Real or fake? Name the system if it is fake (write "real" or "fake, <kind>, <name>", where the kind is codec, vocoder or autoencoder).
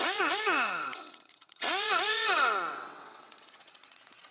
fake, vocoder, WaveNeXt